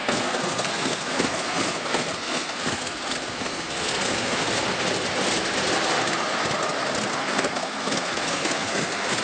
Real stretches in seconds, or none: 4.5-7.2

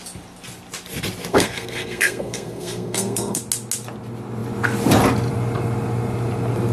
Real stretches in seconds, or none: 0.0-1.3; 3.4-6.7

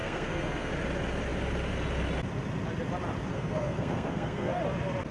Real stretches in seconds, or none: 0.7-3.3; 4.6-5.1